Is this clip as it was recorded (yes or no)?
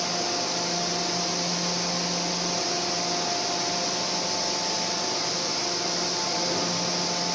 yes